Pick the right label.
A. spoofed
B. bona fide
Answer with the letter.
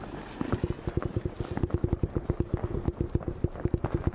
B